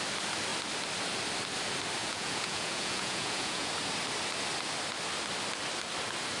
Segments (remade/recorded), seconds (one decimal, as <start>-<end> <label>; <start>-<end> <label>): 0.0-2.0 recorded; 2.0-3.7 remade; 3.7-6.4 recorded